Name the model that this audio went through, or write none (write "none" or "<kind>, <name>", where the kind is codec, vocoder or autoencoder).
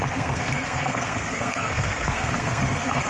codec, SNAC